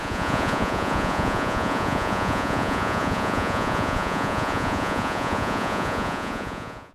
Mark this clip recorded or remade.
remade